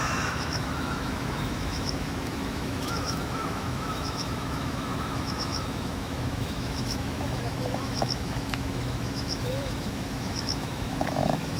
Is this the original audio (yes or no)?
no